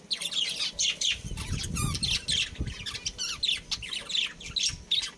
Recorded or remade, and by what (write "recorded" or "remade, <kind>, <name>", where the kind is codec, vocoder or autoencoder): recorded